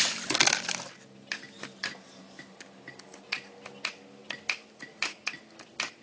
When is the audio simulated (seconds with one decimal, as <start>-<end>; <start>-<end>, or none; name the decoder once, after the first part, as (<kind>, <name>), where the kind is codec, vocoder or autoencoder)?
none